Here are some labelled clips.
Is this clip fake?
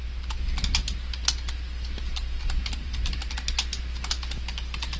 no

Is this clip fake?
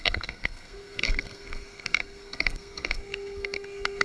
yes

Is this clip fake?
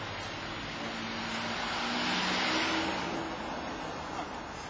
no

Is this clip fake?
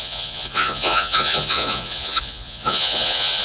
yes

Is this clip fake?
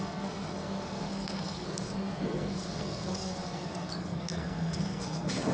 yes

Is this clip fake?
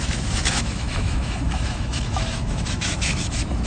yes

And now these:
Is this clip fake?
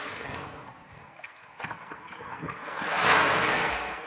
yes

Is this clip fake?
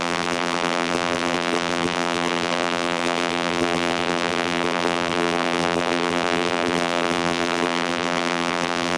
yes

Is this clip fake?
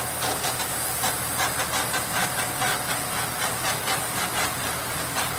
no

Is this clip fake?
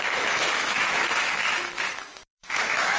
yes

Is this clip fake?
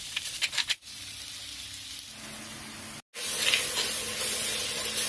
no